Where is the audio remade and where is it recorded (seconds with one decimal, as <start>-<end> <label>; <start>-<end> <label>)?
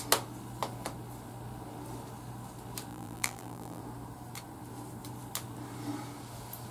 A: 0.0-2.9 recorded; 2.9-3.8 remade; 3.8-6.7 recorded